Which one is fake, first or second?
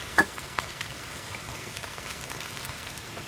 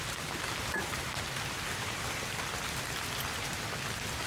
first